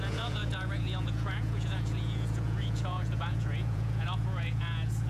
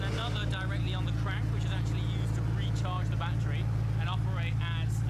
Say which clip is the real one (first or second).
second